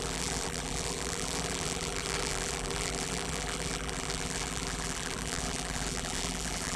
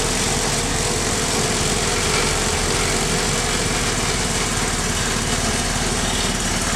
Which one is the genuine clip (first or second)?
second